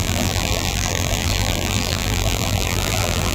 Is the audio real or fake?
fake